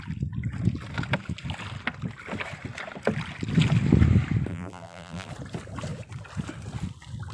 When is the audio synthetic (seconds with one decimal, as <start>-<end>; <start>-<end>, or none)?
4.5-5.3